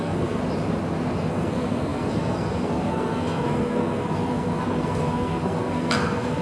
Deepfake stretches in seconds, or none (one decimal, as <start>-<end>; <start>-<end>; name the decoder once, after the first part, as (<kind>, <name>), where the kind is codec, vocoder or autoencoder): 0.0-0.4 (codec, SNAC); 1.3-6.4